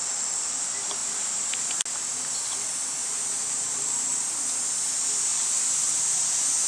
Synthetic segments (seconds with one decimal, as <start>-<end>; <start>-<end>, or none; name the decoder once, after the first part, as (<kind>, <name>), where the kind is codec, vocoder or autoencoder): 1.0-1.6 (vocoder, BigVGAN v2); 3.0-4.6; 5.3-6.0